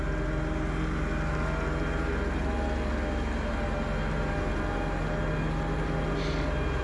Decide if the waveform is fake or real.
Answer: real